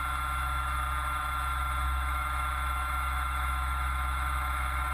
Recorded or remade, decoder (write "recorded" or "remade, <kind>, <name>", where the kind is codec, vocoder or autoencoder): remade, autoencoder, DAC-VAE